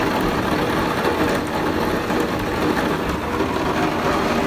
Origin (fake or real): real